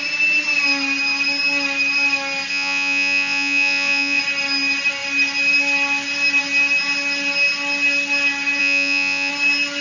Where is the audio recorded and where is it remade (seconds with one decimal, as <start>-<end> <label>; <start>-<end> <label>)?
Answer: 0.0-2.5 recorded; 2.5-4.2 remade; 4.2-8.6 recorded; 8.6-9.3 remade; 9.3-9.8 recorded